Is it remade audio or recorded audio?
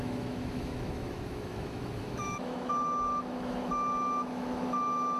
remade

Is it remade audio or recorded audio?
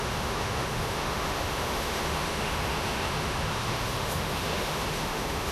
remade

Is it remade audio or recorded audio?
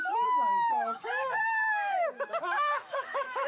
remade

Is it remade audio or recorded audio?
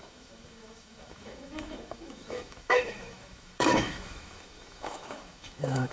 remade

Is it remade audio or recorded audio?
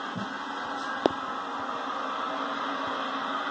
recorded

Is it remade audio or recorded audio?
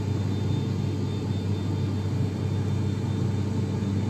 recorded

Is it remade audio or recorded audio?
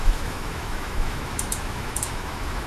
remade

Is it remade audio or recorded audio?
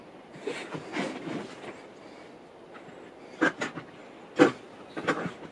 recorded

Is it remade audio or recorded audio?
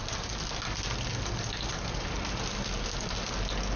recorded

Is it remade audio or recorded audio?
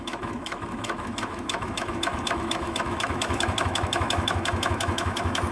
remade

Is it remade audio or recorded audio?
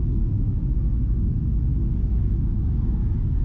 remade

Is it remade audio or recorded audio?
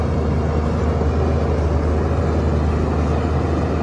recorded